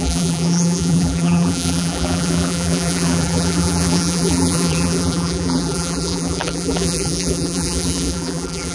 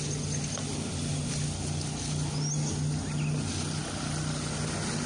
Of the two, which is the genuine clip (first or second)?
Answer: second